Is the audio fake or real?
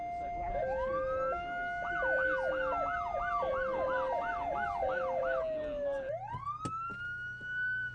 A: real